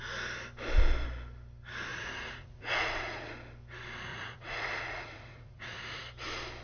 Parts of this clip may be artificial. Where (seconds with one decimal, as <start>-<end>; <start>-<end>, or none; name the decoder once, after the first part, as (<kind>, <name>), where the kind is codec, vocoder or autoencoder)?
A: 1.9-3.3 (vocoder, Vocos); 4.1-6.0